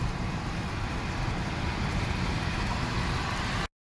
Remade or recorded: recorded